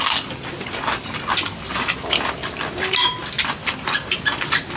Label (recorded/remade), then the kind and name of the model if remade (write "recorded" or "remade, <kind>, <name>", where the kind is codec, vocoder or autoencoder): recorded